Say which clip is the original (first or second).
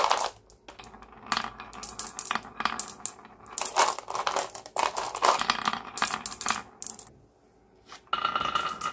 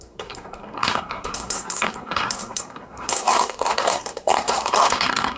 first